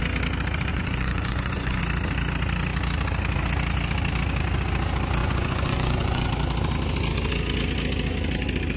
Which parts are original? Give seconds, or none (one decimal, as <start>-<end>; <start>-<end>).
0.0-0.7; 1.8-5.2; 6.3-8.8